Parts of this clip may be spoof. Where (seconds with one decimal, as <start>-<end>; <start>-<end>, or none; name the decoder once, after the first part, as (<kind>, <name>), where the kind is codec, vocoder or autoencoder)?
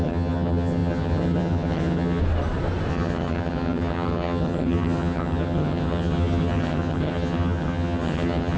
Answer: 0.0-2.2 (vocoder, HiFi-GAN); 2.9-8.6